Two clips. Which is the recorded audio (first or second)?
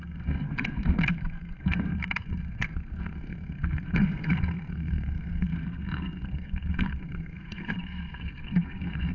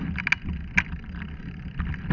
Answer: second